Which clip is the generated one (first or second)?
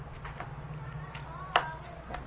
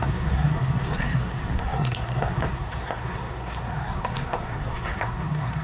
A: second